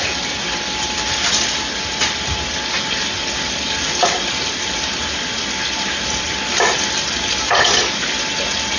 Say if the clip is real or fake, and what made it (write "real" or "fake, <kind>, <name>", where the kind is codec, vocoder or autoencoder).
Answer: fake, vocoder, BigVGAN v2